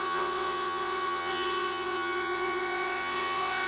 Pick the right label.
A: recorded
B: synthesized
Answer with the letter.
B